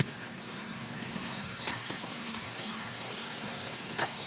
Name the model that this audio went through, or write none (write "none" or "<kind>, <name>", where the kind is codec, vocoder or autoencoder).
codec, SNAC